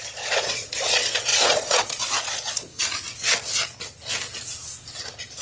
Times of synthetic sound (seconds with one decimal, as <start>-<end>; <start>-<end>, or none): 0.0-2.7